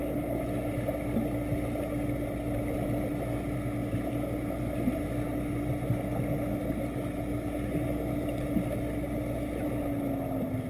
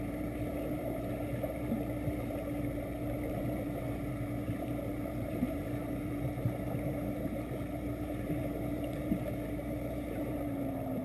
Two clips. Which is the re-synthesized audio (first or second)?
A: second